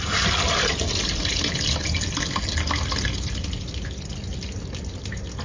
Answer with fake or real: real